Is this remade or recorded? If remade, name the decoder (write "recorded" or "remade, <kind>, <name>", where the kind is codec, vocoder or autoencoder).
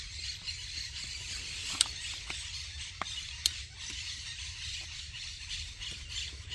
recorded